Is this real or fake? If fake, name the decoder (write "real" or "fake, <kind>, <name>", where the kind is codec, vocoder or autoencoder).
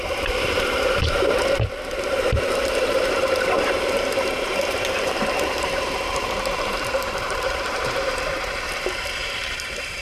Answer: fake, vocoder, BigVGAN v2